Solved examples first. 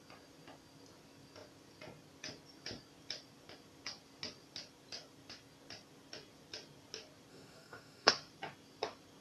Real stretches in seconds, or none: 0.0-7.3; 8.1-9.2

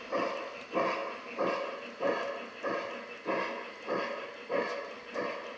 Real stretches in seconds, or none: 0.0-5.6

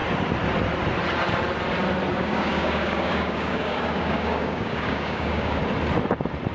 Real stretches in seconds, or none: 0.0-2.1; 5.6-6.5